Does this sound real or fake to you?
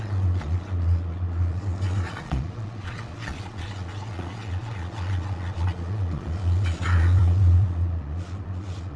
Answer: fake